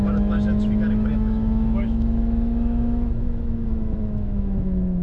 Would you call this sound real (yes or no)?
no